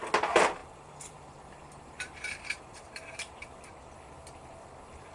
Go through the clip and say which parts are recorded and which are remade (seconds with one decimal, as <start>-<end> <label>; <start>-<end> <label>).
0.0-0.6 recorded; 0.6-3.7 remade; 3.7-5.1 recorded